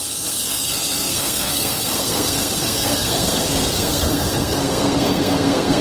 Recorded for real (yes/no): no